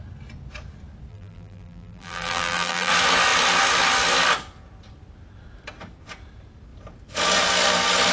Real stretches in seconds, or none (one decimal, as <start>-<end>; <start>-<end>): 0.0-1.1; 2.9-8.1